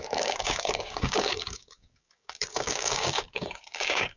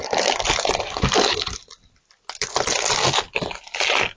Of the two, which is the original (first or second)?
second